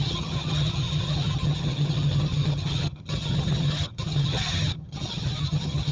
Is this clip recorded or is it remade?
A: remade